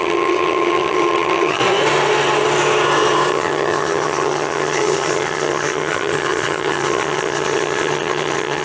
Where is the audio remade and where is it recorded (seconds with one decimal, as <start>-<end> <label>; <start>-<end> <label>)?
0.0-1.6 remade; 1.6-3.3 recorded; 3.3-8.6 remade

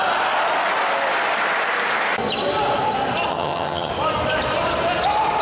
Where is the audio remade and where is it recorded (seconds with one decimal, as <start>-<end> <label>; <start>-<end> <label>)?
0.0-3.3 recorded; 3.3-3.9 remade; 3.9-5.4 recorded

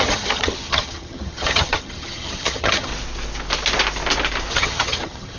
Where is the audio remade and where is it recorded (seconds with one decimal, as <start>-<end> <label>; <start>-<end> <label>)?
0.0-2.9 remade; 2.9-4.5 recorded; 4.5-5.4 remade

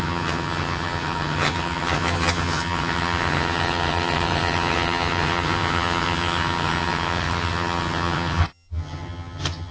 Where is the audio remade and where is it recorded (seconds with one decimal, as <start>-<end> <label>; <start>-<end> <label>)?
0.0-9.7 remade

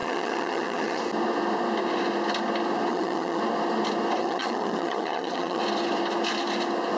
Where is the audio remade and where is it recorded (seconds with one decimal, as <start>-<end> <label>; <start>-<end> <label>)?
0.0-1.0 remade; 1.0-2.9 recorded; 2.9-3.4 remade; 3.4-4.2 recorded; 4.2-5.6 remade; 5.6-7.0 recorded

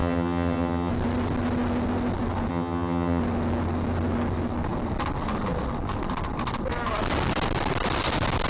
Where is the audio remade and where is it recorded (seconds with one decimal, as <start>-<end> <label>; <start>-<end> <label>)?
0.0-0.9 remade; 0.9-2.5 recorded; 2.5-3.2 remade; 3.2-8.5 recorded

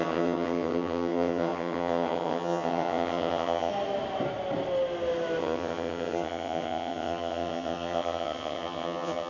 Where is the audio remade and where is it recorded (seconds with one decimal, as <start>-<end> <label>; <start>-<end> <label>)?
0.0-3.7 remade; 3.7-5.4 recorded; 5.4-9.3 remade

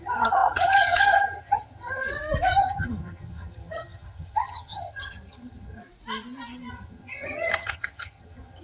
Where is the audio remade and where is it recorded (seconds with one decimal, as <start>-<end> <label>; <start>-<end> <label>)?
0.0-2.0 remade; 2.0-2.6 recorded; 2.6-5.8 remade; 5.8-6.7 recorded; 6.7-8.6 remade